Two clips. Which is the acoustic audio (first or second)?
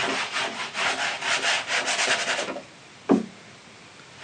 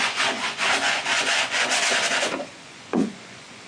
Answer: first